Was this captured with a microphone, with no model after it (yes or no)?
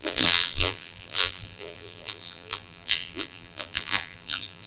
no